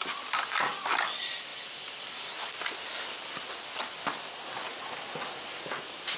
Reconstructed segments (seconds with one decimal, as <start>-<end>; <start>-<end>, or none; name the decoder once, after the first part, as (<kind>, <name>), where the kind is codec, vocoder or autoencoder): none